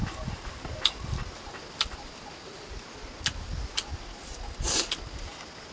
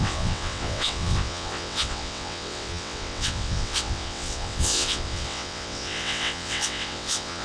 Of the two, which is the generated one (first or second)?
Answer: second